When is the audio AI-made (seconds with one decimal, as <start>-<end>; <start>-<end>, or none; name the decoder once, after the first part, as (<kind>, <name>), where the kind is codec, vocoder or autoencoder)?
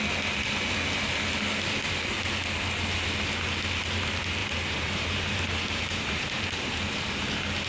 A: 4.4-7.1 (vocoder, BigVGAN v2)